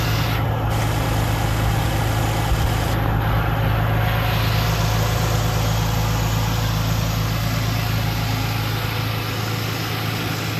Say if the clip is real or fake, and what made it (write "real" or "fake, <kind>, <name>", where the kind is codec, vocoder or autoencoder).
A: real